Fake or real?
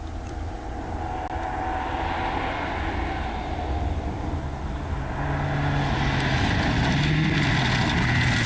real